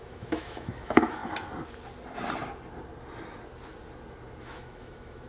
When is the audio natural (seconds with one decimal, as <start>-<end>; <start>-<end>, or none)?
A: 1.2-4.4